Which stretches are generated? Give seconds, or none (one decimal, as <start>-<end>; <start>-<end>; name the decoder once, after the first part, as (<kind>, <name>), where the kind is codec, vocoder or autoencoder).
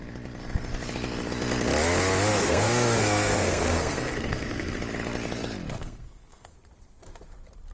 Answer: 2.3-4.8 (codec, SNAC); 5.8-6.5